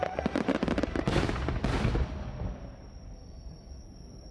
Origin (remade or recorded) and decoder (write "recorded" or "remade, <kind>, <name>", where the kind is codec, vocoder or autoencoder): recorded